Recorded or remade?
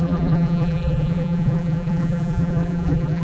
remade